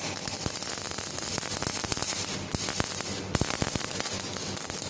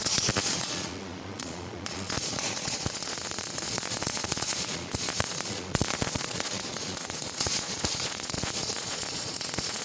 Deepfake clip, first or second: second